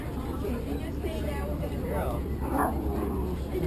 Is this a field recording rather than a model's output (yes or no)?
no